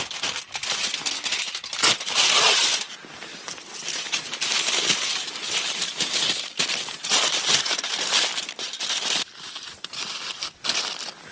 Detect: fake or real real